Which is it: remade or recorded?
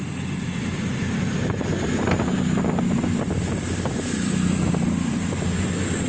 recorded